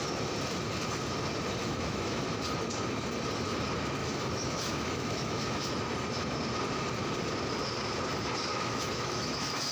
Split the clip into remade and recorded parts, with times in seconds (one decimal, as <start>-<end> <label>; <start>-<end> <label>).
0.0-1.6 recorded; 1.6-2.2 remade; 2.2-4.0 recorded; 4.0-5.7 remade; 5.7-8.5 recorded; 8.5-9.7 remade